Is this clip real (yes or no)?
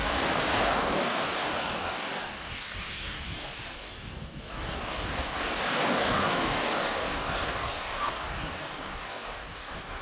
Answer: no